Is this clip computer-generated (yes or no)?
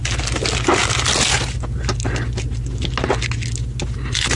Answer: no